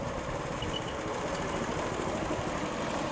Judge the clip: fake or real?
real